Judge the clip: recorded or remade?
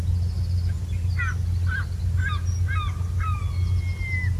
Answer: recorded